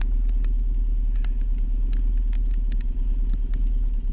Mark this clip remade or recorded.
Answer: recorded